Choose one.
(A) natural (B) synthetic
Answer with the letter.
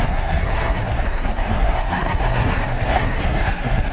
B